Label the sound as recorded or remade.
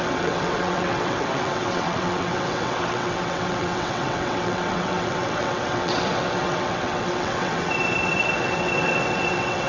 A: remade